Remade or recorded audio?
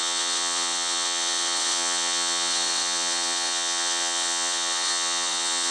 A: remade